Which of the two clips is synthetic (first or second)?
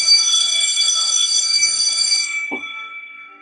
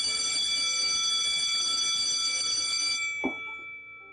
first